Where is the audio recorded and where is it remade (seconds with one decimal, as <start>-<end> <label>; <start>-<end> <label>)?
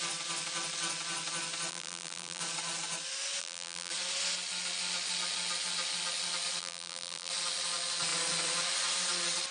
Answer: 0.0-1.7 recorded; 1.7-2.4 remade; 2.4-3.4 recorded; 3.4-3.9 remade; 3.9-6.6 recorded; 6.6-7.3 remade; 7.3-9.5 recorded